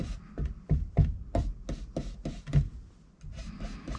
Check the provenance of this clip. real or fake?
real